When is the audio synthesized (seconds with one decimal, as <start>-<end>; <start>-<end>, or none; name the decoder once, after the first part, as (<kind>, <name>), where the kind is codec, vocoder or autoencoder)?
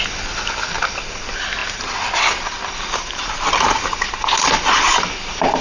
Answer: 1.6-2.5 (vocoder, BigVGAN v2)